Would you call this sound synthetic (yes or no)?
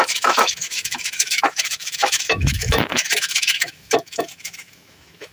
yes